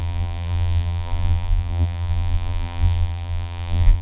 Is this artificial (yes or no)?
yes